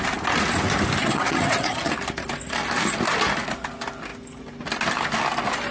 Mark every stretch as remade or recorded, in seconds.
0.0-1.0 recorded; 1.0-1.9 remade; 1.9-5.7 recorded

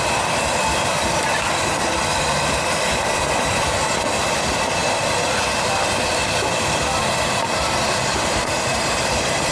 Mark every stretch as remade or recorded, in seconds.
0.0-9.5 recorded